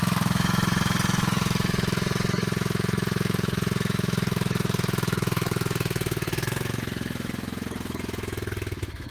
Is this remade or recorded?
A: remade